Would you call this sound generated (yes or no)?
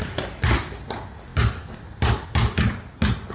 no